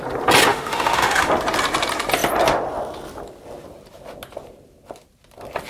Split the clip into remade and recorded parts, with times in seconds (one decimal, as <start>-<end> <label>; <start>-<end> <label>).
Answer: 0.0-0.5 recorded; 0.5-1.3 remade; 1.3-5.7 recorded